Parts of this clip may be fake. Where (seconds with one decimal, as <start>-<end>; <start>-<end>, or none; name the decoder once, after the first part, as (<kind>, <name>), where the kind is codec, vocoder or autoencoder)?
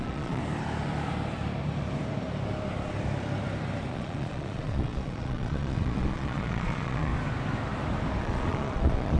0.0-0.4 (vocoder, Vocos); 3.9-7.1; 8.2-9.2